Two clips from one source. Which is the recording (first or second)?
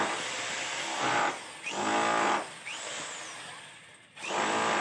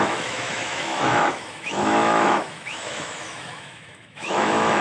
first